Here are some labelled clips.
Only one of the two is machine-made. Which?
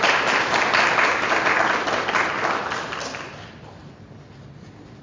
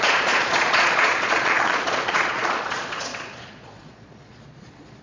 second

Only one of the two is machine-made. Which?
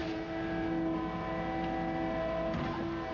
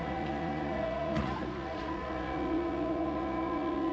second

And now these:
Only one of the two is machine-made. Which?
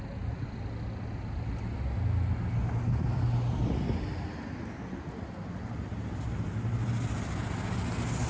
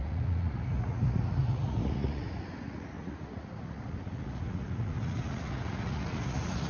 second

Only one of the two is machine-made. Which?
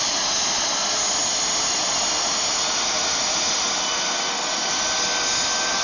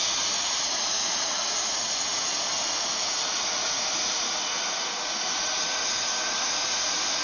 second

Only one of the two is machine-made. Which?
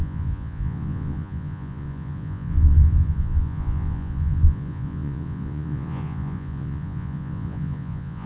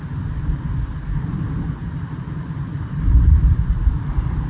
first